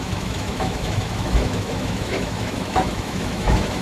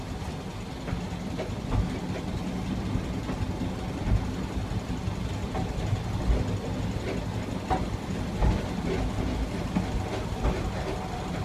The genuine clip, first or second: second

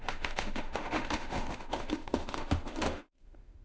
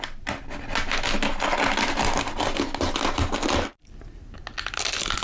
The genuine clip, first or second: second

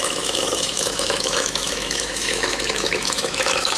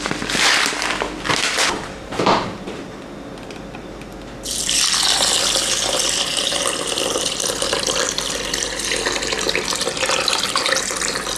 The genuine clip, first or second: second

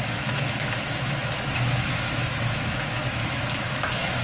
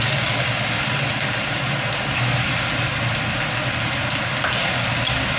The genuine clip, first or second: second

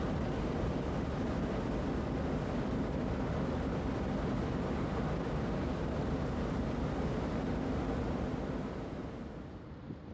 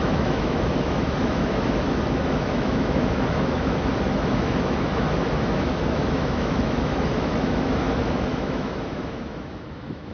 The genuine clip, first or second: first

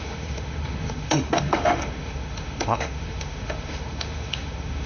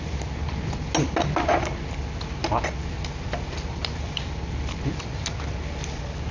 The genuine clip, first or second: second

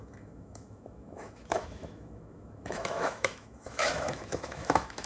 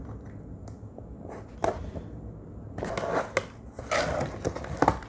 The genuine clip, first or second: second